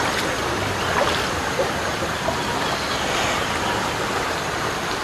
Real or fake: real